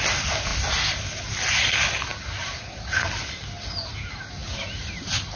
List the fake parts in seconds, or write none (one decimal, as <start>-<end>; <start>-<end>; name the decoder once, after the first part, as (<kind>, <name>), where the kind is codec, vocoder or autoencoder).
none